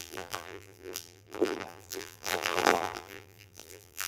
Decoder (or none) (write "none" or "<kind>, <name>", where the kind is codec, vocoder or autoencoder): vocoder, BigVGAN v2